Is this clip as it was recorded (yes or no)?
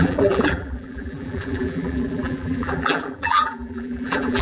no